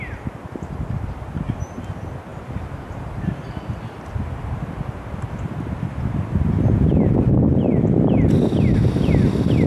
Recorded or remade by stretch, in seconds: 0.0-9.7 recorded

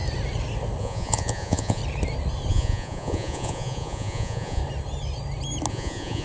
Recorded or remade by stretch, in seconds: 0.0-0.8 recorded; 0.8-1.8 remade; 1.8-2.5 recorded; 2.5-4.6 remade; 4.6-5.7 recorded; 5.7-6.2 remade

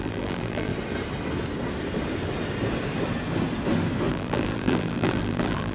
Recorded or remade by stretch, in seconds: 0.0-0.7 remade; 0.7-4.1 recorded; 4.1-5.7 remade

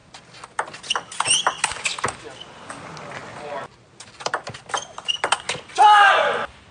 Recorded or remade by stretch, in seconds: 0.0-6.7 recorded

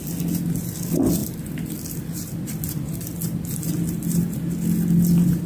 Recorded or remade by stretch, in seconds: 0.0-1.2 recorded; 1.2-4.5 remade; 4.5-5.5 recorded